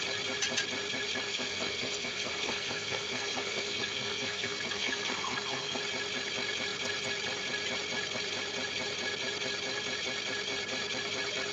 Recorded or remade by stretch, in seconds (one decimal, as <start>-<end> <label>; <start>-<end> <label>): 0.0-1.3 recorded; 1.3-5.8 remade; 5.8-11.5 recorded